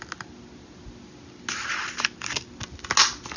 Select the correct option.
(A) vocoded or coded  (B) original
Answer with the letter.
B